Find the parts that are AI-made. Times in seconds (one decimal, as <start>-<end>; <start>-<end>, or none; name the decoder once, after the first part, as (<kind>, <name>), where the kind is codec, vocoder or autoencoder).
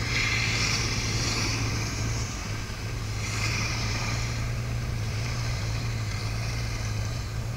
0.0-2.4 (vocoder, BigVGAN v2); 2.9-6.2; 7.0-7.6